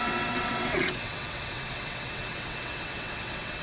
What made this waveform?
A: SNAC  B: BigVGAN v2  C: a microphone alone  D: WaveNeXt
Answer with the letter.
D